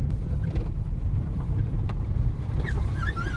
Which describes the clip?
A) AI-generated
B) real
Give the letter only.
A